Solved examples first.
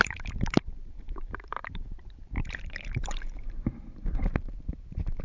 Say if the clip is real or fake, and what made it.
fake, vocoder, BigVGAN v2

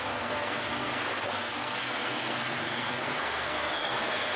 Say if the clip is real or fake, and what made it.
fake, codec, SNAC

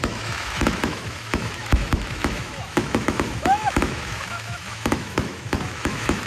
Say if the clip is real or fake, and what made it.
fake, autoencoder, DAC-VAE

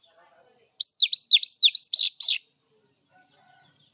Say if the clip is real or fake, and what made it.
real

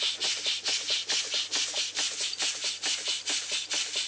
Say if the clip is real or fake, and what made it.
real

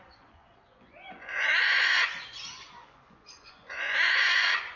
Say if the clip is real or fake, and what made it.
fake, vocoder, Vocos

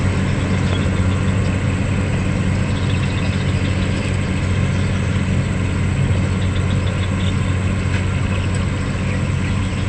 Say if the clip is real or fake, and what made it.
real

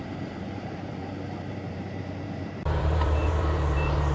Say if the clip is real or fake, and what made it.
fake, vocoder, BigVGAN v2